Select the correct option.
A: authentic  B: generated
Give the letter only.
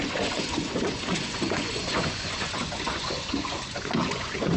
B